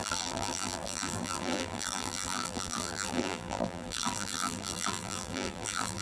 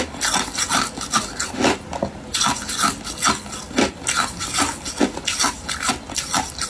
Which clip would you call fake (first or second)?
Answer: first